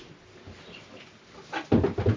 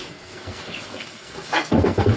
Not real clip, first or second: second